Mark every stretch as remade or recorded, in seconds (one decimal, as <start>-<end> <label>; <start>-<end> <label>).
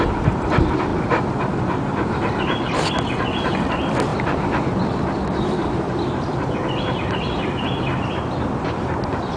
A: 0.0-0.9 recorded; 0.9-2.9 remade; 2.9-4.1 recorded; 4.1-8.2 remade; 8.2-9.4 recorded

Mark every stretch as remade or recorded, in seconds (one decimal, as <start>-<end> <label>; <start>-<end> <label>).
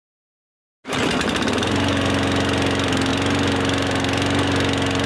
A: 0.0-5.1 recorded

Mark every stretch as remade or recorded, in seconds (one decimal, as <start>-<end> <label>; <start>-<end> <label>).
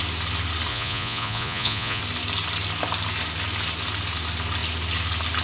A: 0.0-0.7 recorded; 0.7-2.0 remade; 2.0-5.4 recorded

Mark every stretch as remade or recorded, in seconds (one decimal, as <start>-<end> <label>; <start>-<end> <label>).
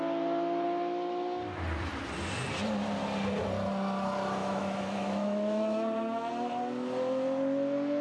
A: 0.0-4.4 recorded; 4.4-6.3 remade; 6.3-8.0 recorded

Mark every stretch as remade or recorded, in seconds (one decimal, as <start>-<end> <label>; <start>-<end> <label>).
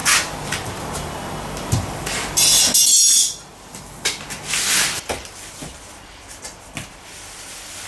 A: 0.0-7.9 recorded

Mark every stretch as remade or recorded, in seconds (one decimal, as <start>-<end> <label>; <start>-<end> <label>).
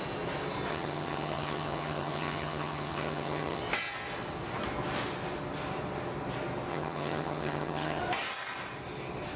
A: 0.0-0.7 recorded; 0.7-3.6 remade; 3.6-6.7 recorded; 6.7-8.0 remade; 8.0-9.4 recorded